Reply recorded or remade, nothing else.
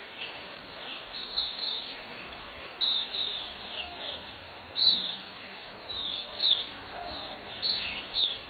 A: remade